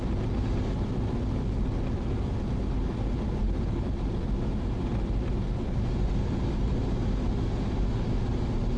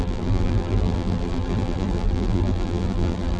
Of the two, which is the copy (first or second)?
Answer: second